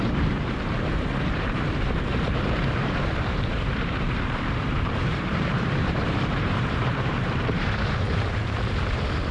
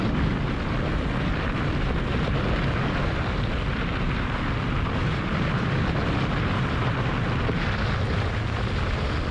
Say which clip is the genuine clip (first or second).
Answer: second